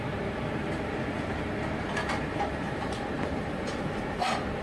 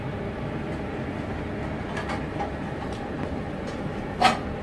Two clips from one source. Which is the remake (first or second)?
first